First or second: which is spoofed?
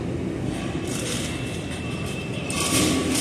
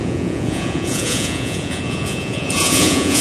second